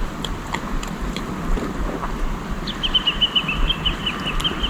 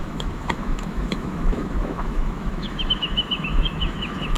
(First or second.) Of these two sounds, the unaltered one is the first